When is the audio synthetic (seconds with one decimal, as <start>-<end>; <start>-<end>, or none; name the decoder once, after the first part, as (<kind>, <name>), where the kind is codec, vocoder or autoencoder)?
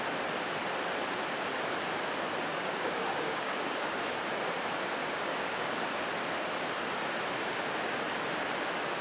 2.5-4.1 (codec, DAC); 5.0-5.7